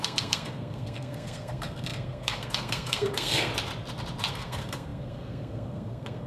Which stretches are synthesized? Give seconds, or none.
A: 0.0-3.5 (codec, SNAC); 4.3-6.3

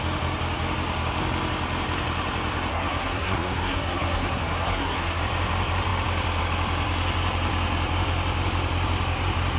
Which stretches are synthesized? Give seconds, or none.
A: 2.7-5.2 (codec, SNAC)

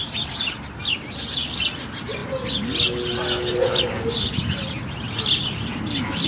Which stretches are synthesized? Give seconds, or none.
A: none

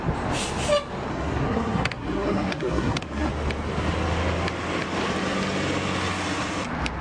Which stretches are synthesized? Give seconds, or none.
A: 1.1-3.3 (codec, SNAC)

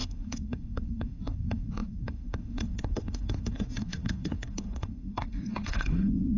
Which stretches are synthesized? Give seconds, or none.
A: 0.0-6.4 (codec, SNAC)

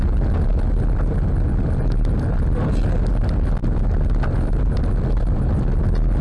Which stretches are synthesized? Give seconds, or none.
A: none